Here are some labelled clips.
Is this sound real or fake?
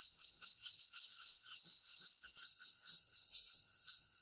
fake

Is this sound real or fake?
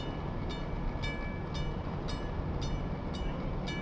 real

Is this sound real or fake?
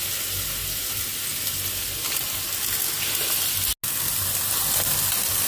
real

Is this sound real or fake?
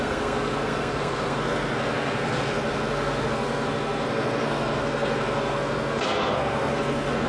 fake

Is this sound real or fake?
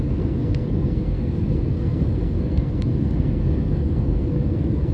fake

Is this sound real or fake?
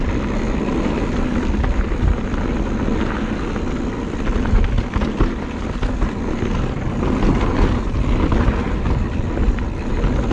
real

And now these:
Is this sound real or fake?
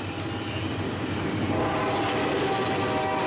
real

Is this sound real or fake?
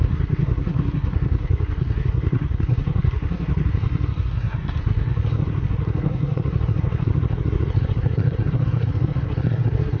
fake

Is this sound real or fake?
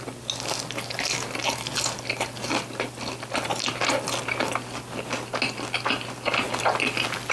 real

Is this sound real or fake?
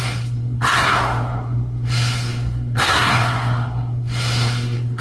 fake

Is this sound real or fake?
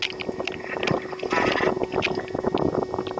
real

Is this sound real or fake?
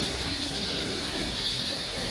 fake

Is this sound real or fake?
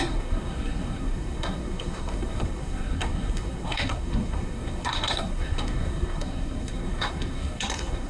fake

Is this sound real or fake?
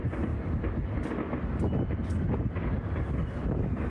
real